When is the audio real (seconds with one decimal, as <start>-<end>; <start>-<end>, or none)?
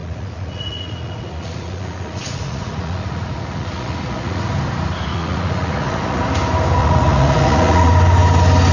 4.5-5.1; 6.2-6.8; 7.9-8.7